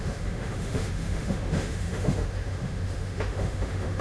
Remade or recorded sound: remade